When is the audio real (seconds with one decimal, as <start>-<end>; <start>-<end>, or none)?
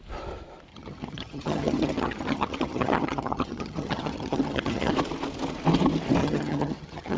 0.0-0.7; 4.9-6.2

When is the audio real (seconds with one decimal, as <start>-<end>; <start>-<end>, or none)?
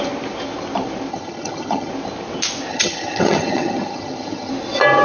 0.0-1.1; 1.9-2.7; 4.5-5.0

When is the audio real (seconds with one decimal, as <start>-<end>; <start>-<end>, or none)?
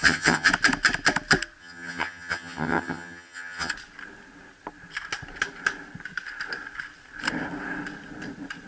0.5-1.6; 3.7-8.7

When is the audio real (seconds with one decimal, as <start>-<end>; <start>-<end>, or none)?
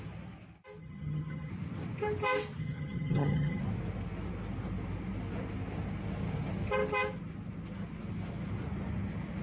0.0-0.8; 1.5-2.6; 3.6-9.4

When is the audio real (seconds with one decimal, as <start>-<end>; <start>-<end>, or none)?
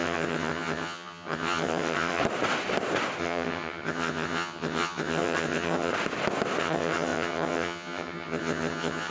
2.2-3.2; 5.9-6.6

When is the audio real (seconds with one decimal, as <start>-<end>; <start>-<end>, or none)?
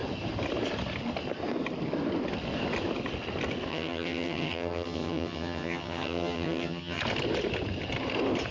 0.0-3.7; 7.0-8.5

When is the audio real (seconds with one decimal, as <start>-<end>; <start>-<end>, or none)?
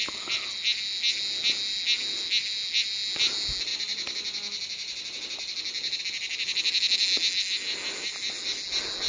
0.0-9.1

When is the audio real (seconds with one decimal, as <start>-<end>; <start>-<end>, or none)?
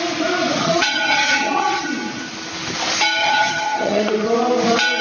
0.0-0.6; 1.9-3.2; 4.1-5.0